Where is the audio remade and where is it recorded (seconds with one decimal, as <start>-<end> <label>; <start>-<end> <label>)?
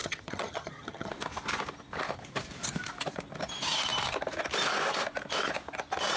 0.0-1.1 remade; 1.1-6.2 recorded